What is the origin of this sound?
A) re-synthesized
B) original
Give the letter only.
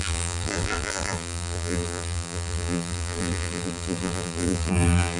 A